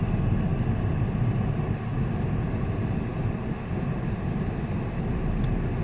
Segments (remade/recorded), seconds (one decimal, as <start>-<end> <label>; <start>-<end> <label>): 0.0-5.8 recorded